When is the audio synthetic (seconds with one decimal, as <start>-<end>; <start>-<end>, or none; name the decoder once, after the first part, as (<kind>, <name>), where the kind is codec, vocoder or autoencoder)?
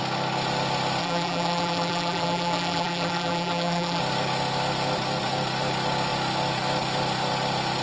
1.0-4.0 (vocoder, BigVGAN v2)